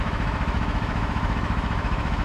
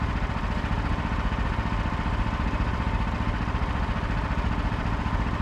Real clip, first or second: second